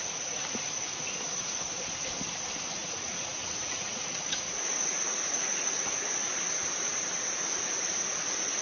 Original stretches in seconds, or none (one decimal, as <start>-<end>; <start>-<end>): 0.0-2.8; 5.9-8.6